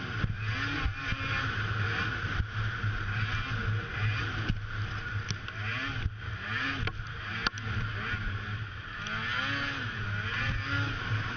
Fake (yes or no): no